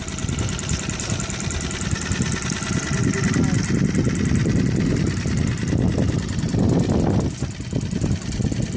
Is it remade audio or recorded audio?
recorded